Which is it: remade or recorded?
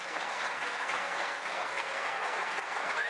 remade